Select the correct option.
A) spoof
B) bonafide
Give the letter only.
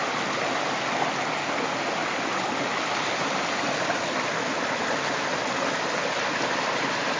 B